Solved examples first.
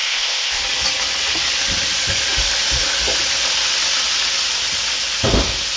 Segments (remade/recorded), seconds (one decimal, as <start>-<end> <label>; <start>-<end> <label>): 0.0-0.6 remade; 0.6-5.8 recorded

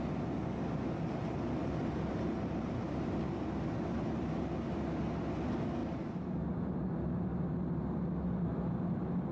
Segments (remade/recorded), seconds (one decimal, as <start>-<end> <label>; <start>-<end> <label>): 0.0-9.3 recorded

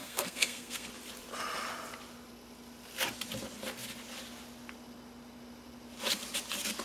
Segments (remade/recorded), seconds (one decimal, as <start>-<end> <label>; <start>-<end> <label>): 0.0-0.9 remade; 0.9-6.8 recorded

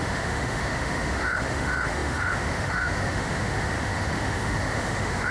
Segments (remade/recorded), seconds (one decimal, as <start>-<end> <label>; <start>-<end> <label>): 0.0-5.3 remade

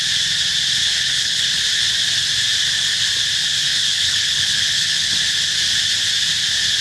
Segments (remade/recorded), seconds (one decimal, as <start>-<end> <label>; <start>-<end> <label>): 0.0-0.8 recorded; 0.8-1.6 remade; 1.6-3.6 recorded; 3.6-5.2 remade; 5.2-6.8 recorded